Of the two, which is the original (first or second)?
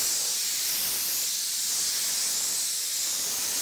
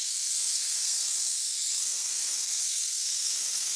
first